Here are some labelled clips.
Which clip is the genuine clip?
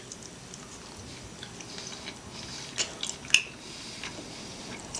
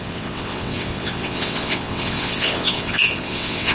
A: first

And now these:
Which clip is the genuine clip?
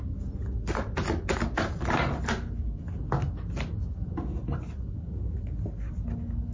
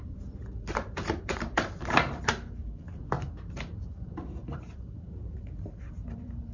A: first